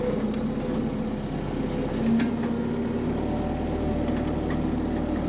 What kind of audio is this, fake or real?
real